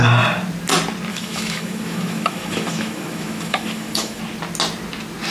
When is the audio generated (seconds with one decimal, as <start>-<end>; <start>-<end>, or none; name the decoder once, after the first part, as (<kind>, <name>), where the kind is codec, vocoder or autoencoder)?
1.1-4.2 (autoencoder, DAC-VAE)